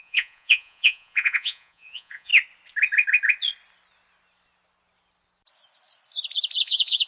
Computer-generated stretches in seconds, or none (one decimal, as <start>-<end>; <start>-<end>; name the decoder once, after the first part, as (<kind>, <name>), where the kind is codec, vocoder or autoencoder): 0.0-2.3 (vocoder, Vocos); 6.6-7.1